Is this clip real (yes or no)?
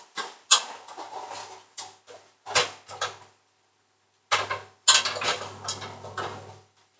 yes